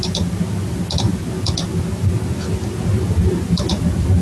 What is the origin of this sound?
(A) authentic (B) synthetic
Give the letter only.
A